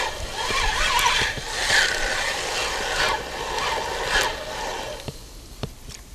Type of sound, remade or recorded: recorded